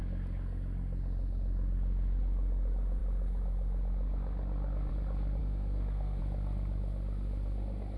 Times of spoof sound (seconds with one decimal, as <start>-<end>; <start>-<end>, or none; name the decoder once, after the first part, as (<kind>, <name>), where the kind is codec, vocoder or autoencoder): 5.4-6.2 (codec, SNAC)